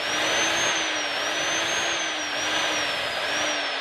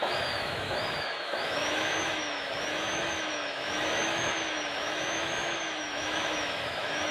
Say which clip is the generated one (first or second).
second